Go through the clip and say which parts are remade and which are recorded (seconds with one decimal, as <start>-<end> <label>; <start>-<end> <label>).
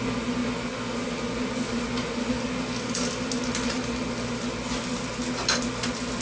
0.0-6.2 recorded